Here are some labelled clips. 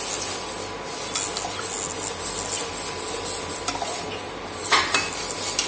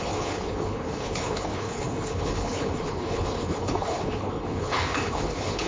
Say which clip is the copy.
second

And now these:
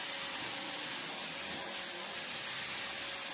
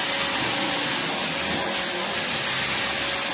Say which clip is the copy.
first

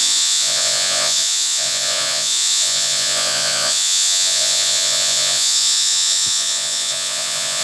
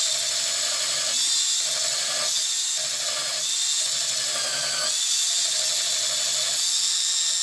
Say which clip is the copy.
first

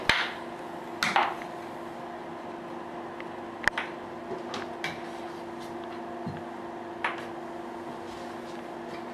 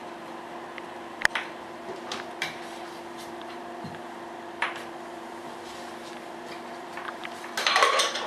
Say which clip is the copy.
second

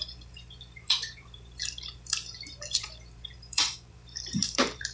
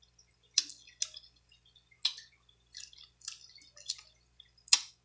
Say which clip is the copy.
first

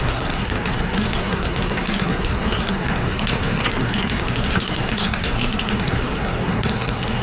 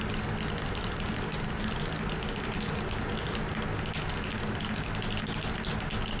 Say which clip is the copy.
first